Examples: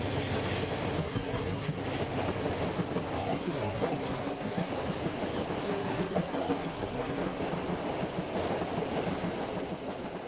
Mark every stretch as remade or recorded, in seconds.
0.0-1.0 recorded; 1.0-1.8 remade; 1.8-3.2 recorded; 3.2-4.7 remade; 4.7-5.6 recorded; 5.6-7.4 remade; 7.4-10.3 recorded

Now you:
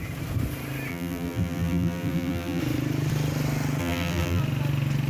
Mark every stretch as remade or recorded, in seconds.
0.0-0.9 recorded; 0.9-2.6 remade; 2.6-3.8 recorded; 3.8-4.4 remade; 4.4-5.1 recorded

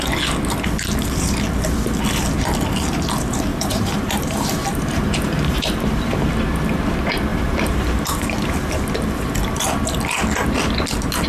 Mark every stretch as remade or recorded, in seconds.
0.0-3.5 recorded; 3.5-6.4 remade; 6.4-7.3 recorded; 7.3-8.0 remade; 8.0-11.3 recorded

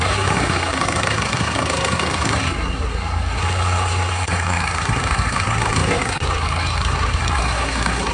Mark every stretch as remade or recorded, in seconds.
0.0-8.1 remade

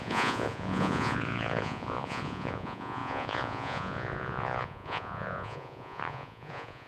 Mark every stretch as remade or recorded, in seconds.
0.0-6.9 remade

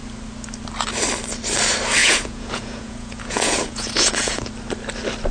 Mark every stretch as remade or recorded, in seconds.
0.0-2.0 recorded; 2.0-4.5 remade; 4.5-5.3 recorded

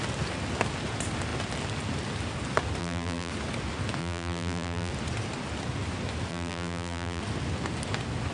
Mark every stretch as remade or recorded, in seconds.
0.0-2.8 recorded; 2.8-3.3 remade; 3.3-4.0 recorded; 4.0-4.9 remade; 4.9-6.3 recorded; 6.3-7.2 remade; 7.2-8.3 recorded

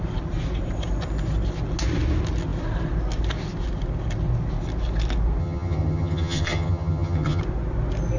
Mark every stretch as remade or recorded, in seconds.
0.0-5.4 recorded; 5.4-7.4 remade; 7.4-8.2 recorded